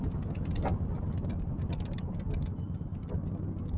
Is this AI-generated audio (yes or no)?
no